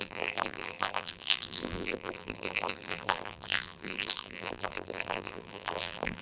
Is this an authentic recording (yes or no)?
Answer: no